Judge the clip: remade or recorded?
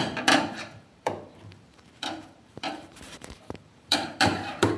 remade